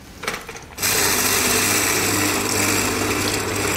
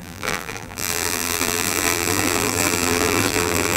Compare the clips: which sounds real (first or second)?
first